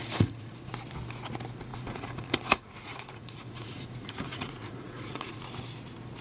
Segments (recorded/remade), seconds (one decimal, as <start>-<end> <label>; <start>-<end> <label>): 0.0-0.7 remade; 0.7-1.7 recorded; 1.7-5.4 remade; 5.4-6.2 recorded